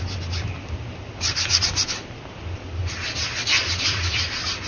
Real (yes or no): yes